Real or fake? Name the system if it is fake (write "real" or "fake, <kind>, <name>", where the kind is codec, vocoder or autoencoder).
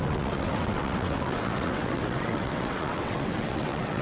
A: fake, vocoder, WaveNeXt